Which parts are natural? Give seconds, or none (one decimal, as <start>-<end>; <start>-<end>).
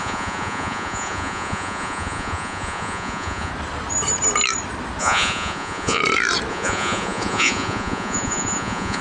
3.5-5.0; 6.0-6.5